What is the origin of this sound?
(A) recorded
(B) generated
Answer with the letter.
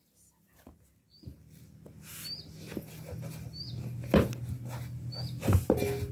A